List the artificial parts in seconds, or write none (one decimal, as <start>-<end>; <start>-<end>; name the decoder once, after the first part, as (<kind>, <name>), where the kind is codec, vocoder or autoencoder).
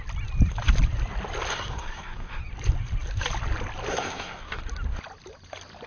1.5-2.4 (codec, SNAC); 3.9-4.6